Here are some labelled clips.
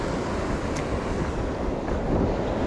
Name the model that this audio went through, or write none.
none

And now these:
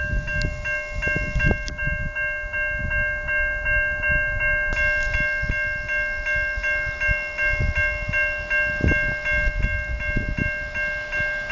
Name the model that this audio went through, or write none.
none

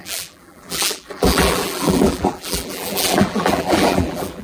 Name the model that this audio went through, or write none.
vocoder, BigVGAN v2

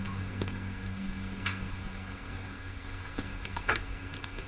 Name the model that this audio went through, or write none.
codec, SNAC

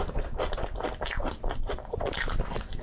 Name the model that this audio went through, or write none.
none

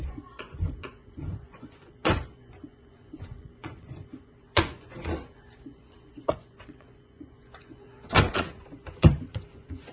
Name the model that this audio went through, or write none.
vocoder, Vocos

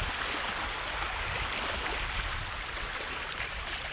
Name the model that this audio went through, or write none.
none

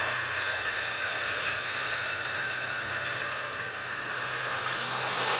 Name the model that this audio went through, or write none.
codec, SNAC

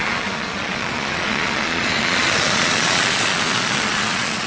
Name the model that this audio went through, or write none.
vocoder, Vocos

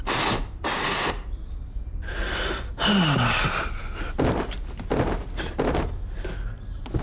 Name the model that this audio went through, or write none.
none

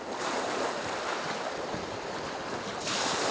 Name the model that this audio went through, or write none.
none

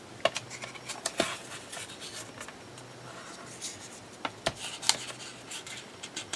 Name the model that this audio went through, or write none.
none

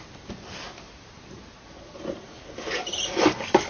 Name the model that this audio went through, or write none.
none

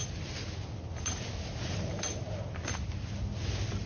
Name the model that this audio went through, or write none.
none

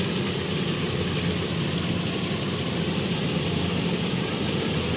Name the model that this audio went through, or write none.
none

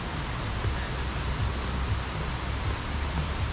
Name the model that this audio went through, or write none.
none